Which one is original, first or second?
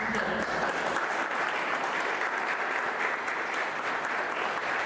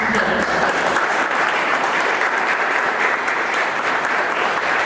first